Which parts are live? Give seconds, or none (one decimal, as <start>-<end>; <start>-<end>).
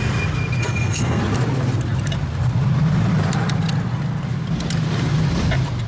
0.0-0.6; 1.2-5.9